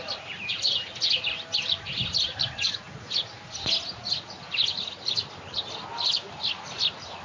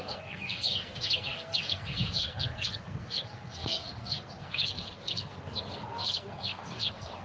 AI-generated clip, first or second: second